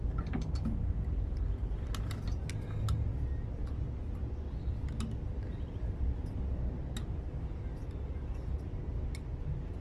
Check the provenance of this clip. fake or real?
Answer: real